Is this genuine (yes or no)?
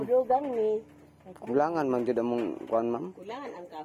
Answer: yes